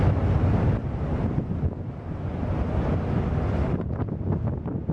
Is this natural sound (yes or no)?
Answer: yes